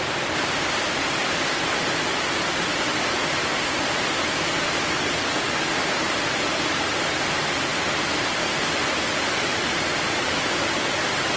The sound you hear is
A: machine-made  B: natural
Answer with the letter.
B